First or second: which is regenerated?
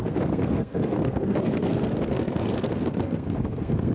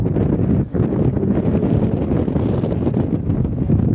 first